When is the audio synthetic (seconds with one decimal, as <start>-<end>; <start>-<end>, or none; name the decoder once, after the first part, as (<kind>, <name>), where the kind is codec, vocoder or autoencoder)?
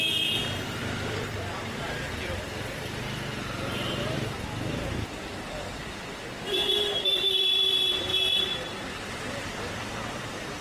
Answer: 0.0-3.0 (vocoder, BigVGAN v2); 4.0-10.6